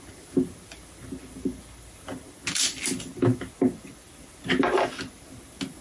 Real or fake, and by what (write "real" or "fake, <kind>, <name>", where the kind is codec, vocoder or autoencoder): real